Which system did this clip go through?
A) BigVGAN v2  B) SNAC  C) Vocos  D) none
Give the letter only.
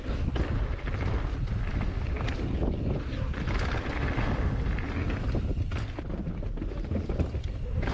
D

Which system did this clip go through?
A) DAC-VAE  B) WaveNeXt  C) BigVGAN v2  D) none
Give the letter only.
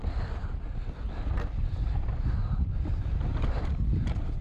D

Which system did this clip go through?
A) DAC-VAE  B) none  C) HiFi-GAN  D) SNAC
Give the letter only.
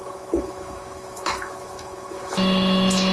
A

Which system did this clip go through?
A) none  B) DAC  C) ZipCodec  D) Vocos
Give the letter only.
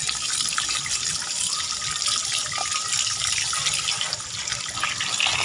A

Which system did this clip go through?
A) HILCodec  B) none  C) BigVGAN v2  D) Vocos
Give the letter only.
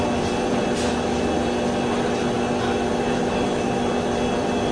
B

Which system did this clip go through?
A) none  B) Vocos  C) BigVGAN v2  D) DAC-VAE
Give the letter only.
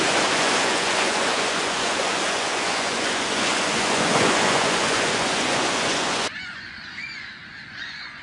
B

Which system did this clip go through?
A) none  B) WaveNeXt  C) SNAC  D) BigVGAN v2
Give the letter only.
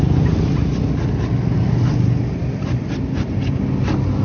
A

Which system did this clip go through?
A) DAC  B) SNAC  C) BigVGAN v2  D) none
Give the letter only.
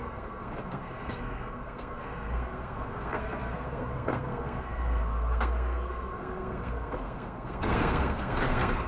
B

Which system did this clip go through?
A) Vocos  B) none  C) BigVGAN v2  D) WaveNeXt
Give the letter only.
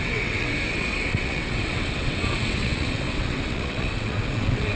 D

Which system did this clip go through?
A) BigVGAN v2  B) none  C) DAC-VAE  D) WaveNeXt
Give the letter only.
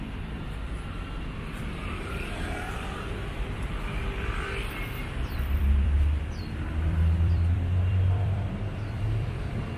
A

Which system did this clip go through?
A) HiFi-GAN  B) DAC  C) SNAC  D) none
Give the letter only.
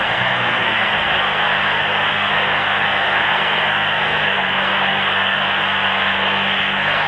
C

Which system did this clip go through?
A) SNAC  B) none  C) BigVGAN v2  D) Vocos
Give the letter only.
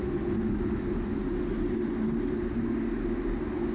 B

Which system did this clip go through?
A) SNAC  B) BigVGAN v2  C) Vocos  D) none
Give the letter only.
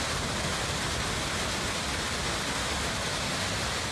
D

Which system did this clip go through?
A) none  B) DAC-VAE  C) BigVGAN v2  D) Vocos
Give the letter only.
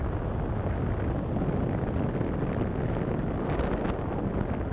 A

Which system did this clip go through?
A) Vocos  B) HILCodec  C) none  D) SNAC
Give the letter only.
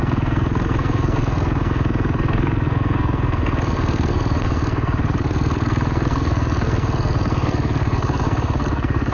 D